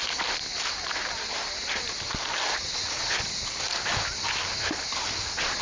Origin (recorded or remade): recorded